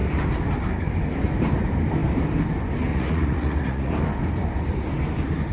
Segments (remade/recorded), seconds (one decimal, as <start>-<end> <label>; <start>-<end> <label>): 0.0-2.9 recorded; 2.9-3.9 remade; 3.9-5.5 recorded

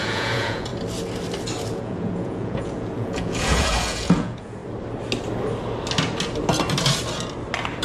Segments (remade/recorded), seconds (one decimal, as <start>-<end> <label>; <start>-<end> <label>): 0.0-0.7 remade; 0.7-1.7 recorded; 1.7-4.6 remade; 4.6-7.8 recorded

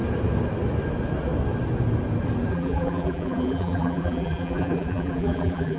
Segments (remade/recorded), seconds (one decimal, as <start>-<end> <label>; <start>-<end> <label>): 0.0-2.5 recorded; 2.5-5.8 remade

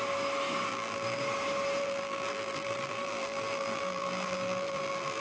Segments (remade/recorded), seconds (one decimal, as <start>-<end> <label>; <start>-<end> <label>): 0.0-0.7 recorded; 0.7-1.2 remade; 1.2-1.8 recorded; 1.8-5.2 remade

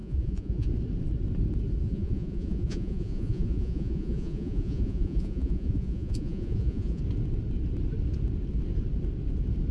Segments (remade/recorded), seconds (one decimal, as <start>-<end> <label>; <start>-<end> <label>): 0.0-0.7 remade; 0.7-1.8 recorded; 1.8-7.0 remade; 7.0-9.7 recorded

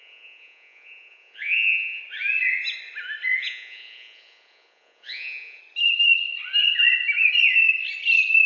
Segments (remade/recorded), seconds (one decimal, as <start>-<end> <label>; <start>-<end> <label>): 0.0-2.0 remade; 2.0-3.4 recorded; 3.4-5.6 remade; 5.6-8.5 recorded